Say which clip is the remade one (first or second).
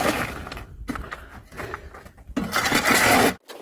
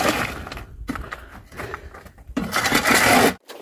second